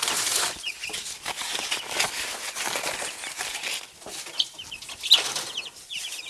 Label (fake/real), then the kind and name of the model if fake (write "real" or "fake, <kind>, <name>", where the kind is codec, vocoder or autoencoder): real